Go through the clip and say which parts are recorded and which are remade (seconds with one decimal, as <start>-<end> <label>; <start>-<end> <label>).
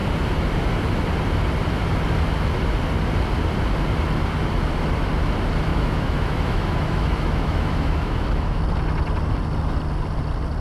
0.0-5.7 recorded; 5.7-8.6 remade; 8.6-10.6 recorded